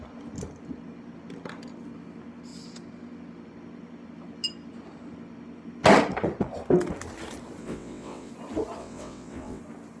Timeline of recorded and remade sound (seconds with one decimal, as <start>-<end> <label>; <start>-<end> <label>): 0.0-7.6 recorded; 7.6-8.3 remade; 8.3-8.8 recorded; 8.8-9.6 remade; 9.6-10.0 recorded